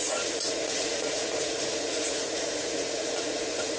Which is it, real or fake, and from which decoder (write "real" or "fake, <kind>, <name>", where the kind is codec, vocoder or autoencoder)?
fake, vocoder, Vocos